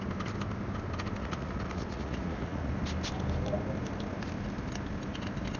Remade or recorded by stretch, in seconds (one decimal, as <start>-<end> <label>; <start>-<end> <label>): 0.0-1.2 recorded; 1.2-2.7 remade; 2.7-5.6 recorded